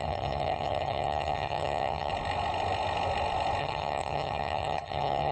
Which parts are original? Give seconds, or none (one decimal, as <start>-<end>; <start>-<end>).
2.1-3.6